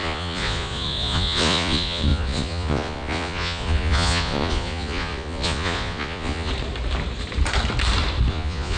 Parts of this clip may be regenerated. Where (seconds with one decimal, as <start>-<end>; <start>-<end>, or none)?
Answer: 0.0-6.5; 8.3-8.8